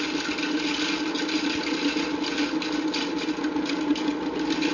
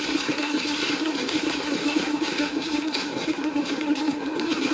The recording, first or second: first